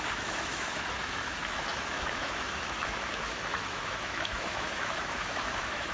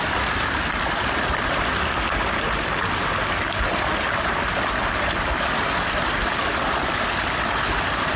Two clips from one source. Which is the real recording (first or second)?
second